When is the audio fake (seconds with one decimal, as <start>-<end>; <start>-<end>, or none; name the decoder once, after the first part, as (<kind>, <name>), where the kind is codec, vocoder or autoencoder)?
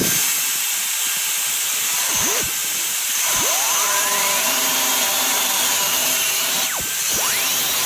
2.6-5.4 (vocoder, BigVGAN v2); 6.0-6.8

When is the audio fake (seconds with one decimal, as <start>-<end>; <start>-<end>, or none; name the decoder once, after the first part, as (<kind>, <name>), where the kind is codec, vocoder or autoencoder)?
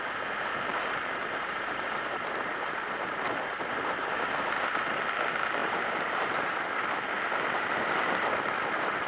0.7-4.7 (vocoder, BigVGAN v2); 5.6-6.7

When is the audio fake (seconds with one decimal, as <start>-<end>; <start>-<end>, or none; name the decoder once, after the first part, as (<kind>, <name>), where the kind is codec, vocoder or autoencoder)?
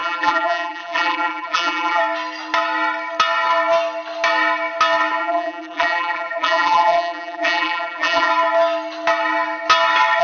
0.0-2.0 (vocoder, BigVGAN v2); 5.2-8.3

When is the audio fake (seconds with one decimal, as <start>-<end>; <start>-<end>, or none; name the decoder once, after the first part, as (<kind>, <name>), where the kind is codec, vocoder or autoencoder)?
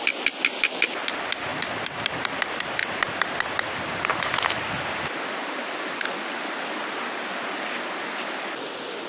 1.5-2.3 (vocoder, BigVGAN v2); 2.8-4.4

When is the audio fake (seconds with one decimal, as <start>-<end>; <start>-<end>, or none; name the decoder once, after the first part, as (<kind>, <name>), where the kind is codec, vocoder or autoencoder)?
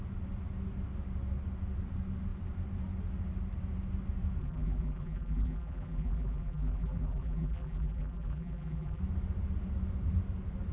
4.4-9.0 (vocoder, BigVGAN v2)